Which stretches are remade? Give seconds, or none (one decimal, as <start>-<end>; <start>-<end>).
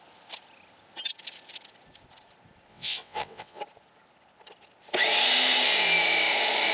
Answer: 2.7-3.6